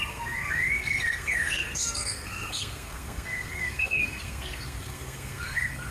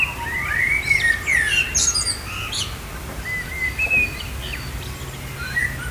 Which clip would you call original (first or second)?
second